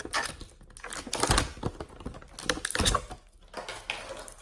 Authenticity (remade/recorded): recorded